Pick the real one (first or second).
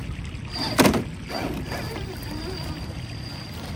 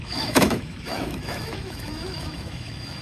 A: first